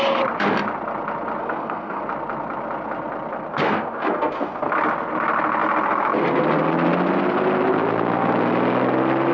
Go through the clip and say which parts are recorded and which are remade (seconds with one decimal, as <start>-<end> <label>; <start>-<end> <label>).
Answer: 0.0-1.4 recorded; 1.4-2.0 remade; 2.0-3.5 recorded; 3.5-4.7 remade; 4.7-9.3 recorded